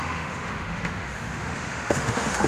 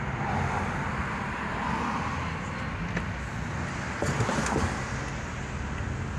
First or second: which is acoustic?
second